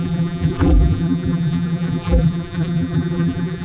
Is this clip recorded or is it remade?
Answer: remade